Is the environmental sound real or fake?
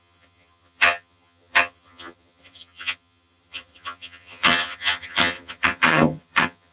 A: fake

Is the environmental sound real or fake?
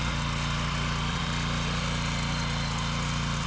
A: real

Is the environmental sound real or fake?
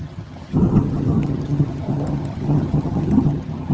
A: fake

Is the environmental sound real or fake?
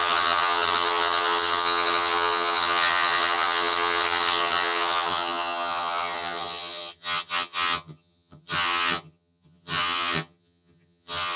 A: fake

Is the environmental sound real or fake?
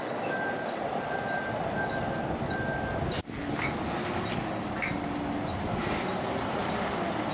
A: real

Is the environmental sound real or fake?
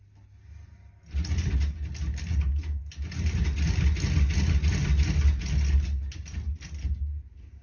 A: real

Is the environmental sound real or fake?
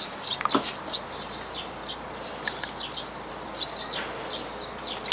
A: real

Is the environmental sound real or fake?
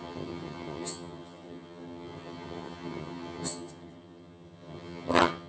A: fake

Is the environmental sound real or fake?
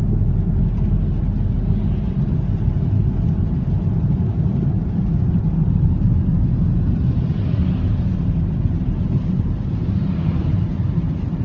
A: real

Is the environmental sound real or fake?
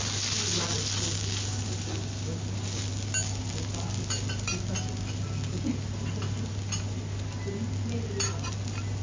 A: real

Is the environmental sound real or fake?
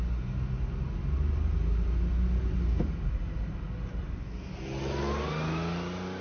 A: real